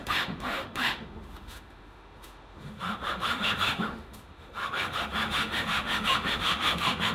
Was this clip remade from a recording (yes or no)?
yes